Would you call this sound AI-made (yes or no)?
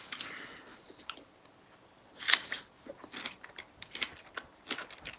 no